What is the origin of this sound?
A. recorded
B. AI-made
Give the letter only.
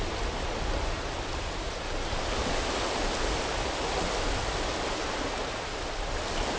A